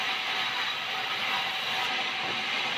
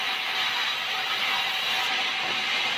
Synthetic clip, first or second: first